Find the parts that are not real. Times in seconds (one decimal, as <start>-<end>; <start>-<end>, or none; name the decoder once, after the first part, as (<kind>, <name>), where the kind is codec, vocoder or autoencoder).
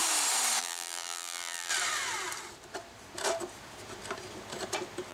0.6-1.7 (vocoder, BigVGAN v2)